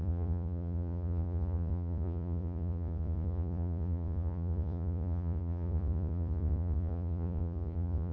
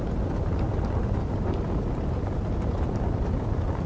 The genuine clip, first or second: second